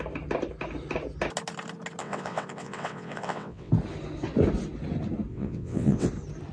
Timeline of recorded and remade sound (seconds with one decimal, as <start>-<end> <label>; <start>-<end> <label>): 0.0-2.0 recorded; 2.0-3.7 remade; 3.7-5.3 recorded; 5.3-6.1 remade; 6.1-6.5 recorded